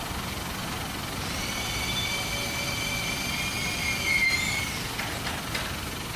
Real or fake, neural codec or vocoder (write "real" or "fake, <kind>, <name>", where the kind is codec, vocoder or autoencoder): real